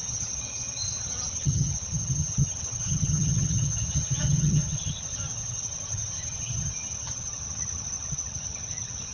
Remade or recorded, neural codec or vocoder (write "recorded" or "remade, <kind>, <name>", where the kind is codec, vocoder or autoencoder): remade, vocoder, HiFi-GAN